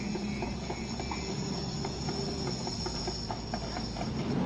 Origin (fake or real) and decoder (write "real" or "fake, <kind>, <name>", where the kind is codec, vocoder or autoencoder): real